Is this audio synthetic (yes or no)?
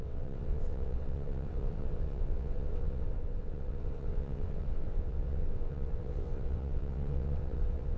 yes